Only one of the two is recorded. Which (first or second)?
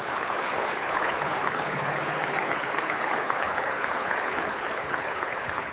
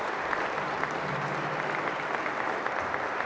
second